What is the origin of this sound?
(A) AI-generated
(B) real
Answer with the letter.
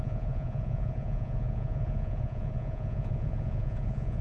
A